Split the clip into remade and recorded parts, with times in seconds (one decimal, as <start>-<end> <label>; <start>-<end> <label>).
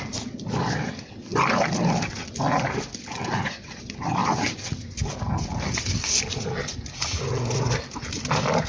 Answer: 0.0-1.3 remade; 1.3-2.2 recorded; 2.2-4.2 remade; 4.2-8.7 recorded